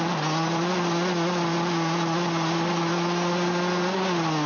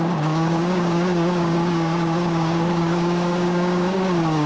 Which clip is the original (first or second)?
first